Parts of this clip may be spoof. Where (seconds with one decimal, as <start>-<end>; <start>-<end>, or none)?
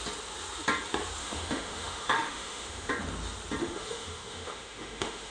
1.2-2.9; 3.6-5.3